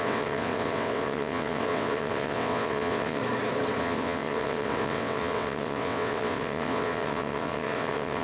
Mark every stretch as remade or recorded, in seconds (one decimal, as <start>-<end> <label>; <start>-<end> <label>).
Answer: 0.0-3.2 remade; 3.2-3.8 recorded; 3.8-8.2 remade